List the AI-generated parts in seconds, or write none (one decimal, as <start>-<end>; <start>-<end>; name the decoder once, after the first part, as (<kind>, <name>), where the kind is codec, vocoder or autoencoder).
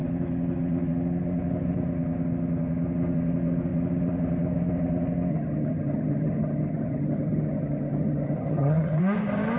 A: 5.3-9.0 (vocoder, HiFi-GAN)